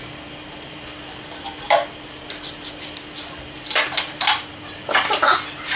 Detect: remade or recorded recorded